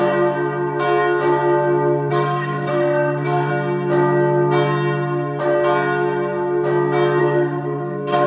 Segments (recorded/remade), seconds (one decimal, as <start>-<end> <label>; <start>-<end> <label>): 0.0-2.1 recorded; 2.1-3.5 remade; 3.5-7.2 recorded; 7.2-8.3 remade